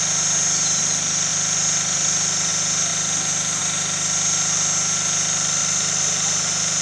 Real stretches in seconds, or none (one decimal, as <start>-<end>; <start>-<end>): 0.0-1.3; 2.5-2.9; 3.6-5.6